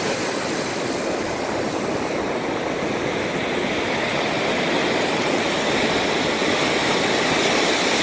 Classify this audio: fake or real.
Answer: real